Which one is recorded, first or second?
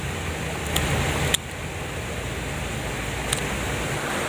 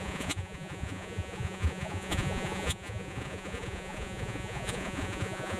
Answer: first